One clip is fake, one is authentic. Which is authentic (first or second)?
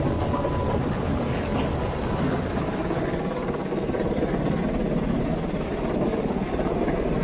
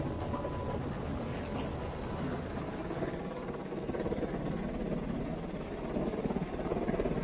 second